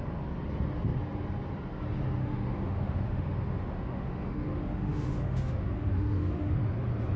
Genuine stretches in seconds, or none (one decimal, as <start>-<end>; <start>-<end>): 0.0-2.2; 6.5-7.2